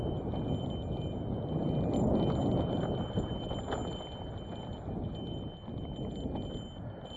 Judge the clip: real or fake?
real